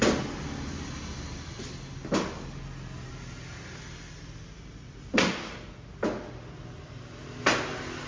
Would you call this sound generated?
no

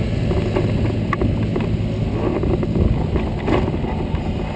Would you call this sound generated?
no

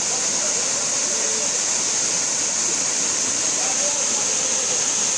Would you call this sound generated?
no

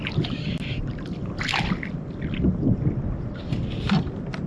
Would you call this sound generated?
no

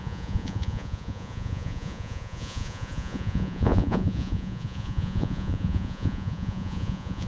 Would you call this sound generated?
yes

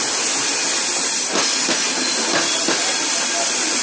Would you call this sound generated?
no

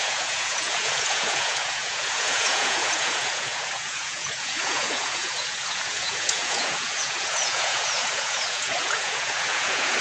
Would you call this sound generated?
yes